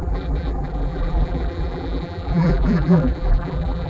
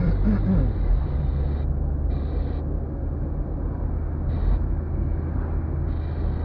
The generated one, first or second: first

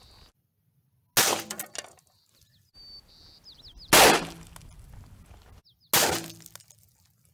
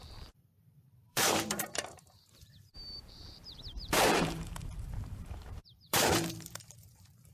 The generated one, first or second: second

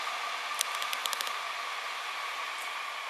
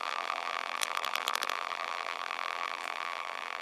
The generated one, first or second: second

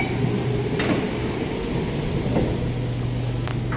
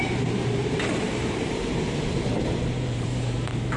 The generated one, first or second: second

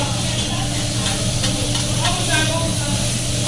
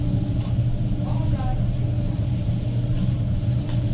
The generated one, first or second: second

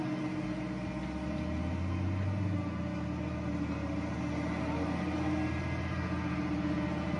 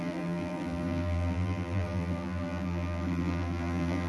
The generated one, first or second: second